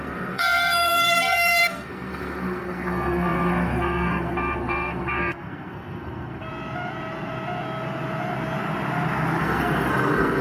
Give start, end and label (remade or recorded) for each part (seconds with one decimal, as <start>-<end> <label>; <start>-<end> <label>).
0.0-6.5 remade; 6.5-9.4 recorded; 9.4-10.4 remade